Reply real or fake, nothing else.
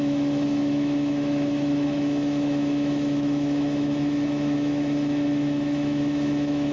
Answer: fake